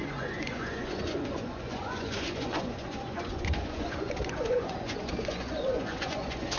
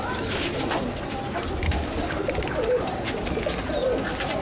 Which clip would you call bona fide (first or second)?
second